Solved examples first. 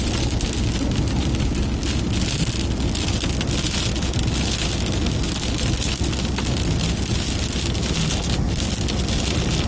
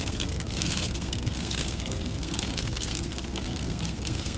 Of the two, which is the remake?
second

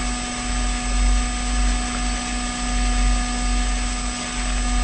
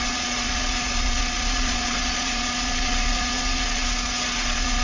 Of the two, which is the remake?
second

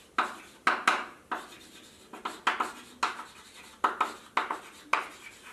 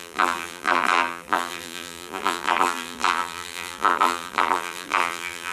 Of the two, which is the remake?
second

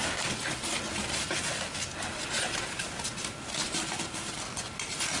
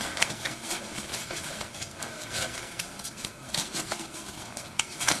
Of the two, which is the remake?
second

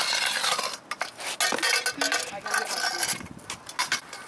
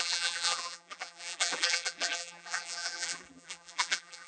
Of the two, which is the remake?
second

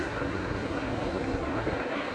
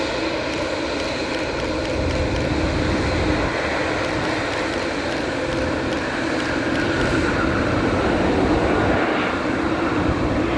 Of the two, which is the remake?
first